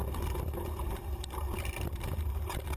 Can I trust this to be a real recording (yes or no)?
yes